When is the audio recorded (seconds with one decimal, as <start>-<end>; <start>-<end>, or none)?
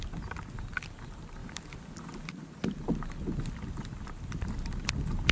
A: 0.0-5.3